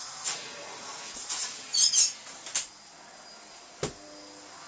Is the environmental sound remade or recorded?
recorded